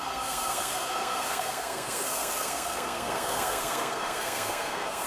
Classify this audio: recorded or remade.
remade